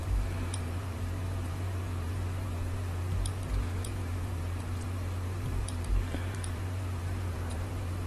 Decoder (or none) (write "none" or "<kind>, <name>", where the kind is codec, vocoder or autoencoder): vocoder, BigVGAN v2